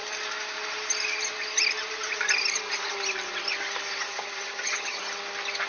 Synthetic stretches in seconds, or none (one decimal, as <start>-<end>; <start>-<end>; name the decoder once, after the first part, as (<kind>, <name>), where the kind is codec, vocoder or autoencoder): 4.0-5.0 (vocoder, HiFi-GAN)